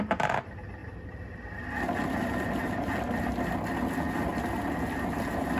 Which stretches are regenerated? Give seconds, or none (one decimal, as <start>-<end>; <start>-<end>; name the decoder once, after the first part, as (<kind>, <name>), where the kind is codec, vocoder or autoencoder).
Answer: none